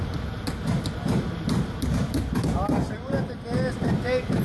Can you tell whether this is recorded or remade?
recorded